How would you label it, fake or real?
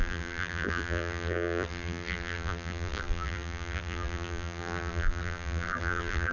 fake